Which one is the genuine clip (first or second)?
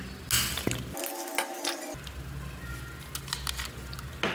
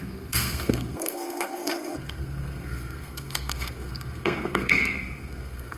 first